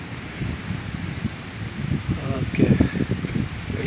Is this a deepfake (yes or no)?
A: yes